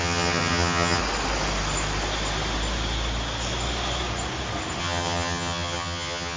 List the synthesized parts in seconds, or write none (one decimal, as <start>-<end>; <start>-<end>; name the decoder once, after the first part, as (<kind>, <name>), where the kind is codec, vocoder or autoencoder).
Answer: 0.0-1.0 (vocoder, HiFi-GAN); 4.8-6.4